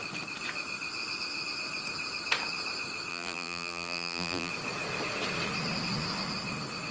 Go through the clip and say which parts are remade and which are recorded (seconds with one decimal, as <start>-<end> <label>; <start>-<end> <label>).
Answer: 0.0-3.1 recorded; 3.1-4.5 remade; 4.5-6.9 recorded